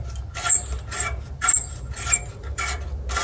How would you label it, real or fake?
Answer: real